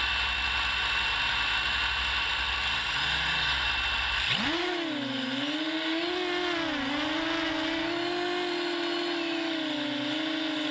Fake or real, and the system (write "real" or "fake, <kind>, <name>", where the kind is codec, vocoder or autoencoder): real